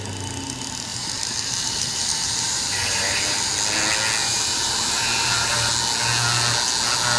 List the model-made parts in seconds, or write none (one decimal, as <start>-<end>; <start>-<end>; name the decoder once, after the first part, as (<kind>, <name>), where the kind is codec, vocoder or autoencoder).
0.9-3.5 (vocoder, BigVGAN v2); 4.2-5.7